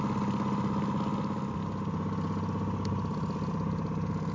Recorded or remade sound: recorded